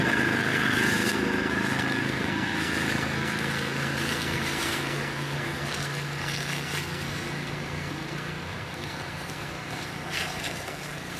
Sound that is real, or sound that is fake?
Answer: fake